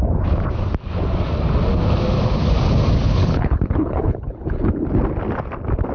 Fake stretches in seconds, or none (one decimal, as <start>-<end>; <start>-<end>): 3.0-4.7